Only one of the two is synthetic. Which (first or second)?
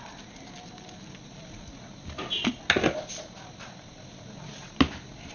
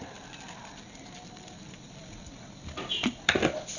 second